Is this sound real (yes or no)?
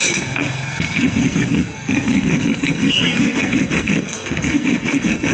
no